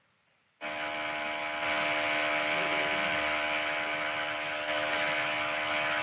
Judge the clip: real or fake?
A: real